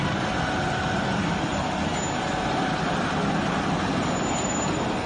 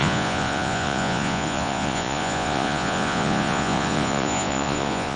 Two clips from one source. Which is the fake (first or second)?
second